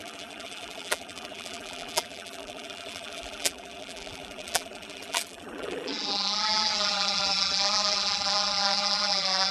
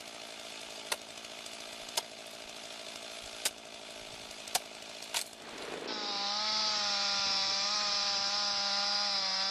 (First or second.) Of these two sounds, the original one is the second